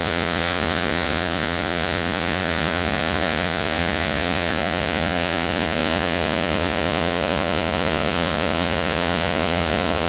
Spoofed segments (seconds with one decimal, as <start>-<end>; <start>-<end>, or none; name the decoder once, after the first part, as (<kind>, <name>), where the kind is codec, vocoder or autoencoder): 0.0-10.1 (vocoder, Vocos)